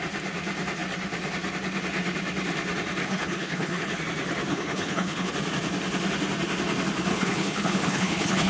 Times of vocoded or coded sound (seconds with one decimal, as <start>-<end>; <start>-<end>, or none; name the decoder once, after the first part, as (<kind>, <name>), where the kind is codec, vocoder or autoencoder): 3.0-4.0 (codec, HILCodec); 4.5-5.3; 7.1-8.5